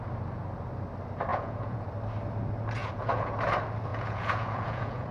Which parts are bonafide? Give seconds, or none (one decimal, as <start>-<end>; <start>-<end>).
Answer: 0.0-1.3; 1.9-2.8; 3.4-3.9